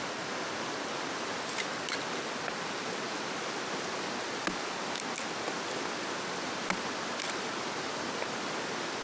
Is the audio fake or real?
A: real